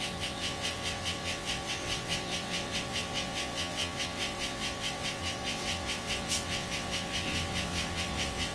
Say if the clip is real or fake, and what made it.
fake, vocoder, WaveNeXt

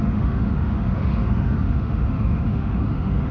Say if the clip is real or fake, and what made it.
fake, autoencoder, DAC-VAE